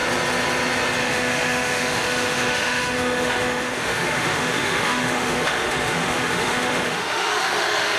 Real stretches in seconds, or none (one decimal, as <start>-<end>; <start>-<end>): 0.0-1.0